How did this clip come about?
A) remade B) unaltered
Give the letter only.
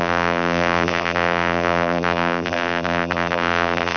A